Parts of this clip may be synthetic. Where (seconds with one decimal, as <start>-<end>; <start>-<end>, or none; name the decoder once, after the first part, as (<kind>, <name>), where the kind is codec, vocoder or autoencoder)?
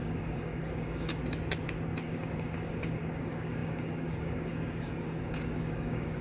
0.0-1.2 (codec, DAC); 2.0-6.2